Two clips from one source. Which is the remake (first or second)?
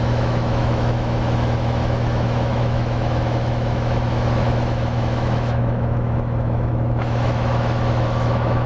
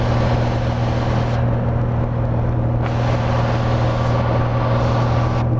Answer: first